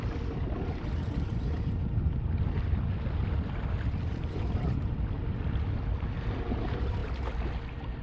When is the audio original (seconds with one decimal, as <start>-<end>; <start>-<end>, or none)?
0.0-4.1; 4.9-8.0